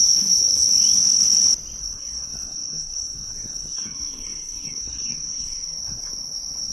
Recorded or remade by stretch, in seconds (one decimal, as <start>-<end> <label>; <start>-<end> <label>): 0.0-0.7 remade; 0.7-1.8 recorded; 1.8-6.7 remade